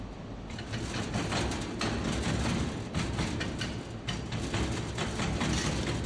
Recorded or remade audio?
recorded